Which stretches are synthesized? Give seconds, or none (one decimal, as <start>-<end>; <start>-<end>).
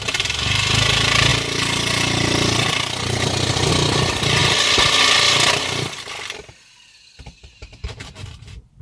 none